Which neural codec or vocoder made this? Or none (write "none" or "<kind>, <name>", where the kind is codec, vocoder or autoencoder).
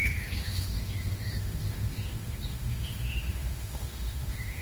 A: autoencoder, DAC-VAE